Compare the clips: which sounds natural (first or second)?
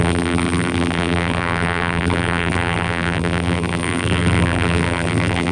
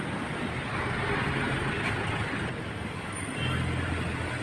second